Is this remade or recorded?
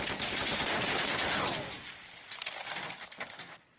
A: recorded